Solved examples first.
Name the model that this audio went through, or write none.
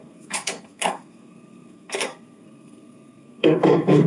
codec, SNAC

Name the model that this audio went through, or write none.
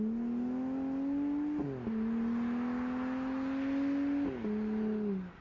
none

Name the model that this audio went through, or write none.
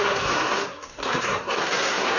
codec, SNAC